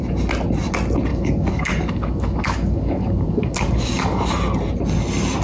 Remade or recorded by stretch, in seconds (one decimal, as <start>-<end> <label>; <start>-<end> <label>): 0.0-1.1 recorded; 1.1-4.3 remade; 4.3-5.4 recorded